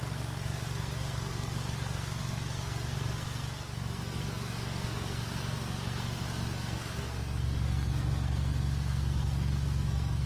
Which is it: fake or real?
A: fake